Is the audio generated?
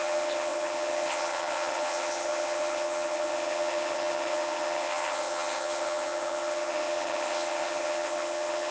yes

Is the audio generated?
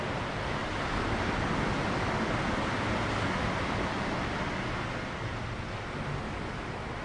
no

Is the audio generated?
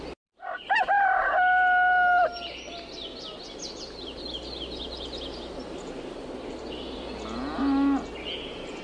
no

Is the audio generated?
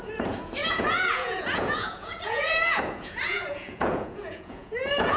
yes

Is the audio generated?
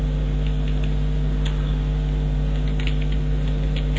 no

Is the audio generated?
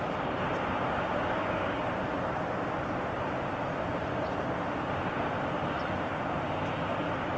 no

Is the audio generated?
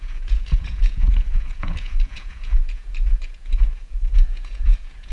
yes